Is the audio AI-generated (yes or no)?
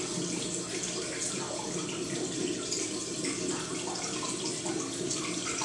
no